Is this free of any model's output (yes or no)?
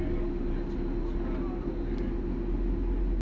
yes